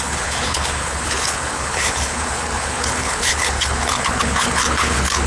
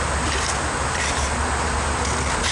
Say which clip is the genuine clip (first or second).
second